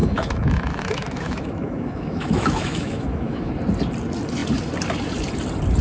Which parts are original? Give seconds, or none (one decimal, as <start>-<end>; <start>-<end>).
3.5-5.8